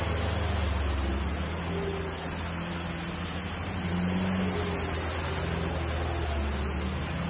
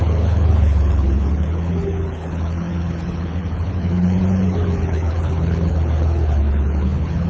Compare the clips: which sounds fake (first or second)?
second